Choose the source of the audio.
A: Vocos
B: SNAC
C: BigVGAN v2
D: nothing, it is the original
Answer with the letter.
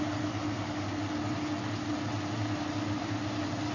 D